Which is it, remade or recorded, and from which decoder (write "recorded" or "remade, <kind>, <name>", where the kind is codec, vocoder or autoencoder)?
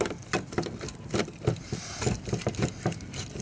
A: recorded